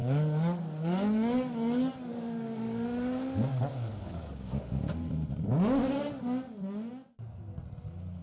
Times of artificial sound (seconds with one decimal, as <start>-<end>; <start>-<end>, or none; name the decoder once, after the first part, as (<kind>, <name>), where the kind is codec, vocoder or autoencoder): 0.0-4.9 (codec, DAC)